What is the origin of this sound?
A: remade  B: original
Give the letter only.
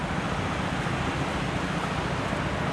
B